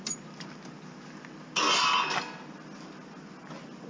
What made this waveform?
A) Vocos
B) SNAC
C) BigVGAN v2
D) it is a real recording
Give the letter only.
D